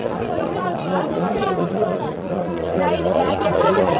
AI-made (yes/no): yes